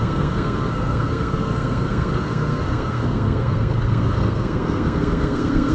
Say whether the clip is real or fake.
fake